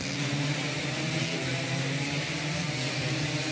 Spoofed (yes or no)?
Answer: no